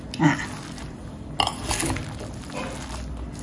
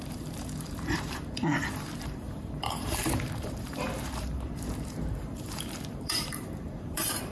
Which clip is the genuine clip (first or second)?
first